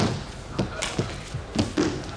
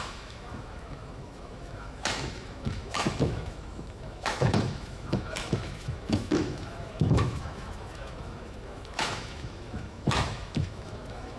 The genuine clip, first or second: first